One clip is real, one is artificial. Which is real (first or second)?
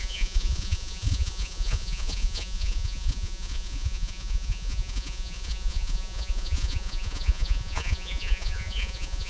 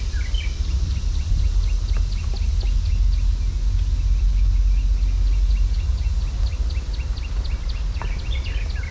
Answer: second